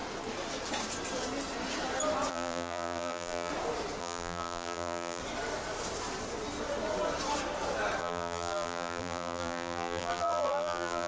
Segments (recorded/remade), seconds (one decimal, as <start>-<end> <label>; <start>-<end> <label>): 0.0-2.3 recorded; 2.3-3.5 remade; 3.5-4.0 recorded; 4.0-5.2 remade; 5.2-8.0 recorded; 8.0-11.1 remade